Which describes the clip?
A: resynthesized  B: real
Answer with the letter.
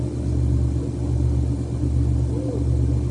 B